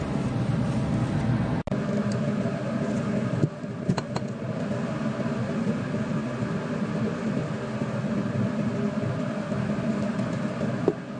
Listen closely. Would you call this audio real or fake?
real